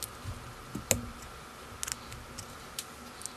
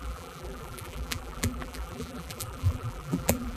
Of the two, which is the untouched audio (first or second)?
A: first